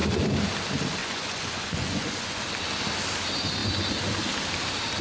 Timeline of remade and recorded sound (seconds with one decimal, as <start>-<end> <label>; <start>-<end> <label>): 0.0-1.0 recorded; 1.0-2.4 remade; 2.4-5.0 recorded